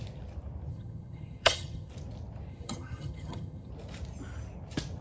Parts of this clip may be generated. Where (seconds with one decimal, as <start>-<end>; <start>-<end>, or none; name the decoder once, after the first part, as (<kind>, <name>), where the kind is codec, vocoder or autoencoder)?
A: 0.7-1.9 (vocoder, HiFi-GAN); 2.5-3.7